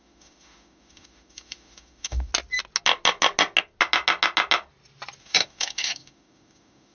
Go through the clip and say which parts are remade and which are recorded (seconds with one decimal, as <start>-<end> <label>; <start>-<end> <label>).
0.0-2.3 remade; 2.3-5.2 recorded; 5.2-6.9 remade